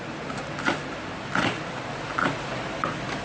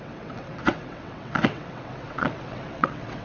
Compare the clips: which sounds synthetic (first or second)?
second